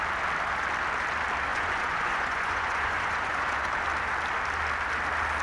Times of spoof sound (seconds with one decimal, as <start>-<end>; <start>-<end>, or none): 1.5-3.7